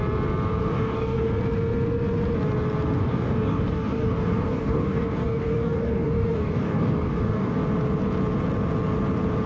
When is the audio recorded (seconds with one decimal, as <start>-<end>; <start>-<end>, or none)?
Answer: 0.0-0.6; 1.3-3.0; 7.6-9.5